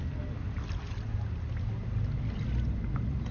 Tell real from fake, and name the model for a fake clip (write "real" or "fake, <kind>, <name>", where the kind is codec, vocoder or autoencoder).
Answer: real